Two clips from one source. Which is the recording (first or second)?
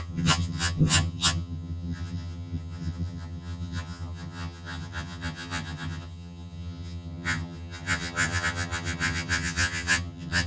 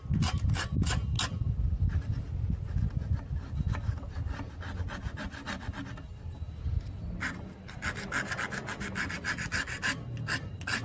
second